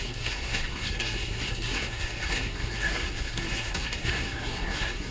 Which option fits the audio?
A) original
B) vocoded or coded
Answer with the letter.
B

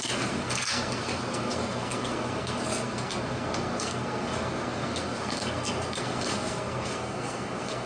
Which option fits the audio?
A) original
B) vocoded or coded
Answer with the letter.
B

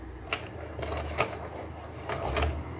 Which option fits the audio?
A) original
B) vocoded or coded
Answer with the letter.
A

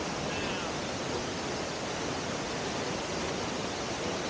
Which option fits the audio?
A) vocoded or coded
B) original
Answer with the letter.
B